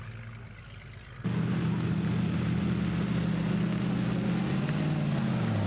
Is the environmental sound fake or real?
real